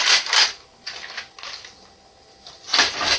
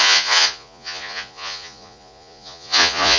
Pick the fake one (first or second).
second